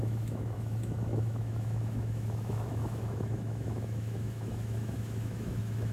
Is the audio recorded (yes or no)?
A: no